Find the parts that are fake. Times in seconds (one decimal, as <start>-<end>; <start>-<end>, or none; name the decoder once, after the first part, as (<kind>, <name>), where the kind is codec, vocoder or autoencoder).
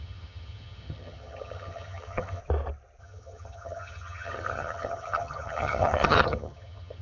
0.0-2.4 (vocoder, HiFi-GAN); 3.0-7.0